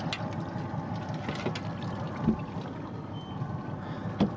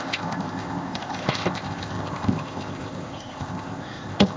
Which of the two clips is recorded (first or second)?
first